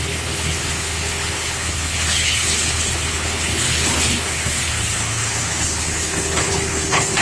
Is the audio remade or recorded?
remade